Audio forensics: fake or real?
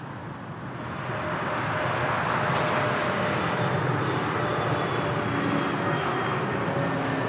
real